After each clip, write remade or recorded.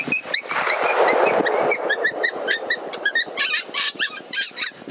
remade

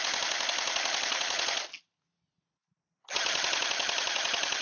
recorded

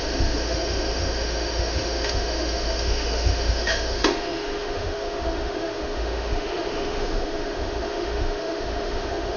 remade